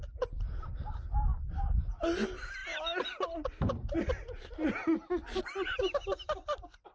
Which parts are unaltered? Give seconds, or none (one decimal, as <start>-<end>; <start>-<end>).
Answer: 0.0-6.9